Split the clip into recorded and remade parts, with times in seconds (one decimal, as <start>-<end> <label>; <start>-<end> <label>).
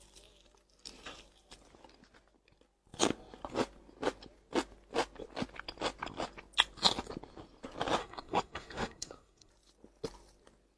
0.0-8.0 recorded; 8.0-9.5 remade; 9.5-10.8 recorded